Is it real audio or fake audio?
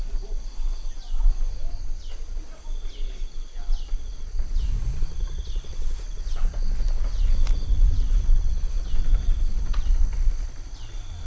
real